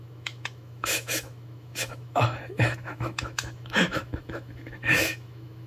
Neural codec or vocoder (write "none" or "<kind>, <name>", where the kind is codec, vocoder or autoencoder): autoencoder, DAC-VAE